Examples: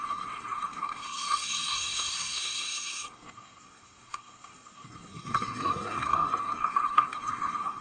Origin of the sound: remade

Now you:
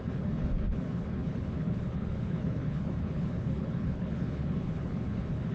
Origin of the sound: remade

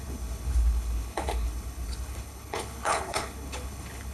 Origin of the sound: remade